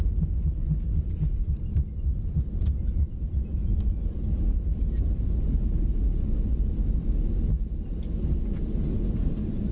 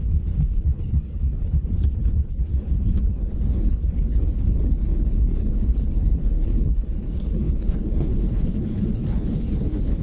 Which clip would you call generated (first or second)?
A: second